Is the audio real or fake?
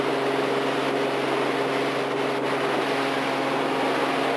real